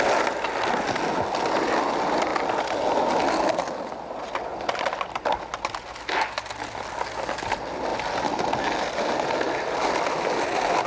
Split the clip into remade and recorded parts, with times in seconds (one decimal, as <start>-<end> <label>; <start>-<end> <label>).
0.0-10.9 recorded